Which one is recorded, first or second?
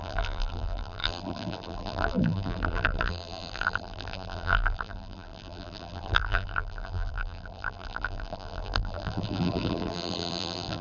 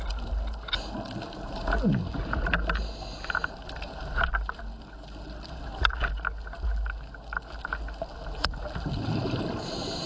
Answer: second